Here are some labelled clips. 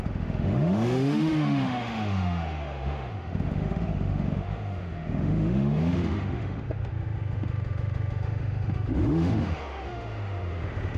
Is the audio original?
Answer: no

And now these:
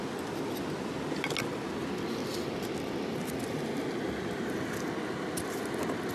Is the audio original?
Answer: yes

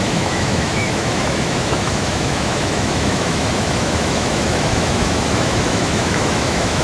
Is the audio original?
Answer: no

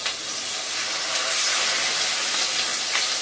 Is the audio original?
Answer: yes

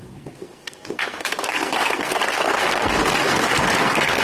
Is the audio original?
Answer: no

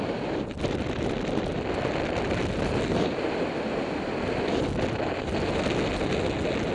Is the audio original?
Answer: yes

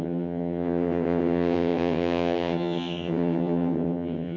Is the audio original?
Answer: no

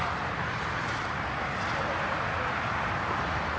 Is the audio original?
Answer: yes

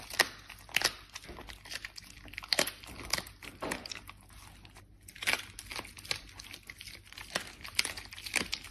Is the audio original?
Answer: yes